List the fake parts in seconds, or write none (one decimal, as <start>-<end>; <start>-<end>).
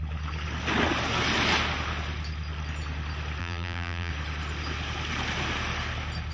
3.4-4.1